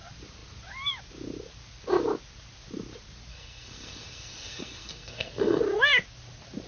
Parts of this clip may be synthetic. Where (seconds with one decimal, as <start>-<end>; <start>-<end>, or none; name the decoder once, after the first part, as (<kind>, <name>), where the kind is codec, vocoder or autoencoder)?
3.3-5.6 (codec, SNAC)